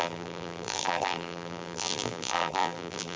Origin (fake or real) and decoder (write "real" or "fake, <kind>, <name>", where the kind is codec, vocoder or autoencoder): fake, vocoder, BigVGAN v2